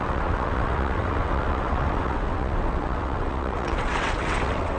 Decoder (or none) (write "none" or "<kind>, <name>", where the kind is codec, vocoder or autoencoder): vocoder, WaveNeXt